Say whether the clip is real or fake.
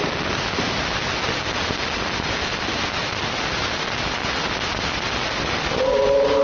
real